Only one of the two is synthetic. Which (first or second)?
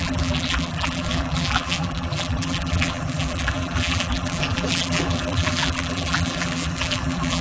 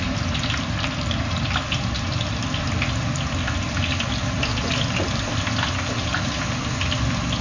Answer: first